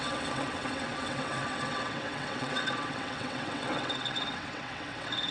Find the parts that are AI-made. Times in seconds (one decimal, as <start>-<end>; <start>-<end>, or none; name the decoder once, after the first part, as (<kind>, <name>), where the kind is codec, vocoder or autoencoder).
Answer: 0.0-5.3 (vocoder, WaveNeXt)